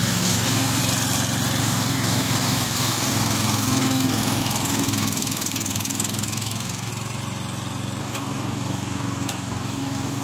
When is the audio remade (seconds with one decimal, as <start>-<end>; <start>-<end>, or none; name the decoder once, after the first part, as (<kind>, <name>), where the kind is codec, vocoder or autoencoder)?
0.0-0.8 (codec, DAC); 1.6-6.9; 8.0-10.2